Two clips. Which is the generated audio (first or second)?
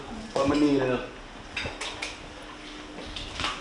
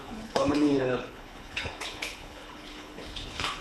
second